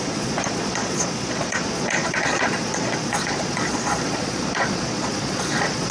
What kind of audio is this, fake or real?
fake